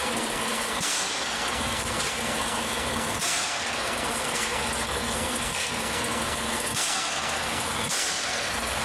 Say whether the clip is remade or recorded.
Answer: remade